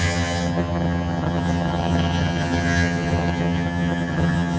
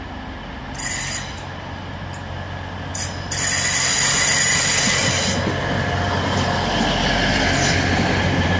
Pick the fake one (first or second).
first